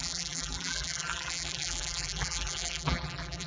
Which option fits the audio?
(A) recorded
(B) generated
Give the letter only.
B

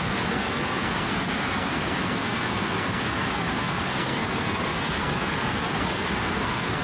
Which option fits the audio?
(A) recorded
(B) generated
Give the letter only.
B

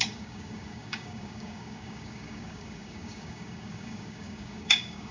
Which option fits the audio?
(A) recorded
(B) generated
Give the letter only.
B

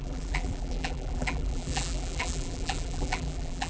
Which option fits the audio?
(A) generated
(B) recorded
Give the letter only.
A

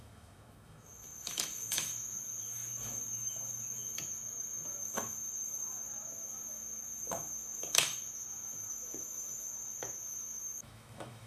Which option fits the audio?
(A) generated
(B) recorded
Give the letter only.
A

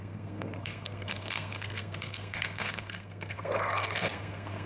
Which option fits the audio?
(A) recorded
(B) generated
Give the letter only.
B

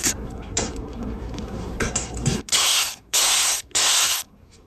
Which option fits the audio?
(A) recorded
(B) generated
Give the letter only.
B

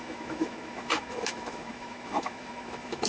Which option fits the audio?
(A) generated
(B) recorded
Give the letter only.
A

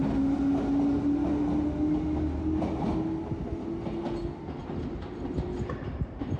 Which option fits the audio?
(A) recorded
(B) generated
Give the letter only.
A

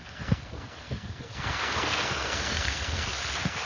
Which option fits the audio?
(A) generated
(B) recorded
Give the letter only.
A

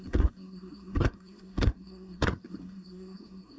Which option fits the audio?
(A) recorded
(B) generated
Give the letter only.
B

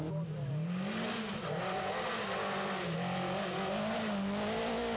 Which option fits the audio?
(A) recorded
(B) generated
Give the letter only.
A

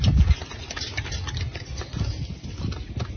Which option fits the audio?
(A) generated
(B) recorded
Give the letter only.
B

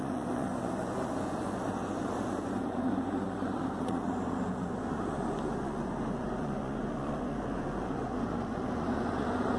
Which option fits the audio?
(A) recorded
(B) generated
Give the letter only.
B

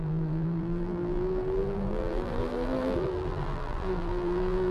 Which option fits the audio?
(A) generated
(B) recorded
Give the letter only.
A